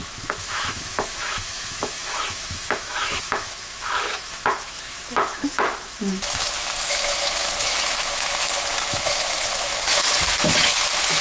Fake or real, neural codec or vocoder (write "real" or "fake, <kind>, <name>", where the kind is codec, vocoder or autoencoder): fake, autoencoder, DAC-VAE